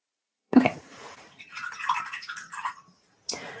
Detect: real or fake fake